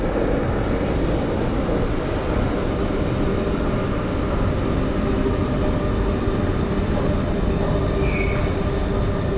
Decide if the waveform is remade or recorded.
recorded